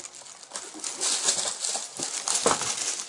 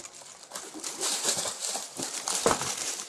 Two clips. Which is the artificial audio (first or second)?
second